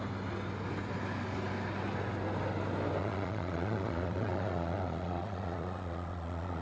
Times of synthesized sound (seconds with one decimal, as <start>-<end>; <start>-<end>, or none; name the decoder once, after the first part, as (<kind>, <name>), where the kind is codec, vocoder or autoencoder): 3.0-6.6 (vocoder, Vocos)